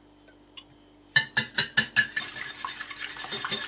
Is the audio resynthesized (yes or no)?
no